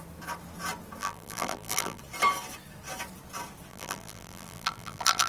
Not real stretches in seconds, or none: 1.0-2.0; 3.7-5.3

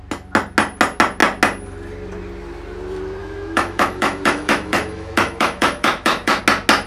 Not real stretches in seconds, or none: 3.2-6.4

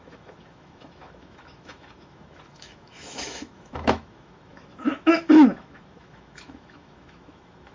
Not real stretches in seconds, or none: 0.0-7.7

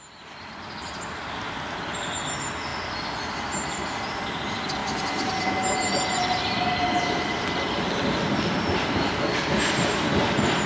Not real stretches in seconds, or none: none

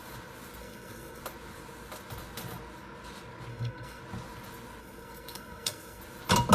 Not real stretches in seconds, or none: 0.6-1.2; 3.5-4.0; 4.8-6.0

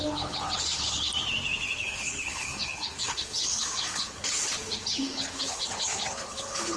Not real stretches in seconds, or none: 0.0-1.1; 1.8-6.8